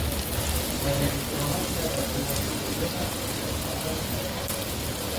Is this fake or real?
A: real